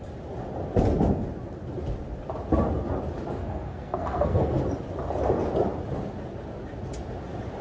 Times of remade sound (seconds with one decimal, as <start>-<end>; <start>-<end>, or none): 3.4-4.6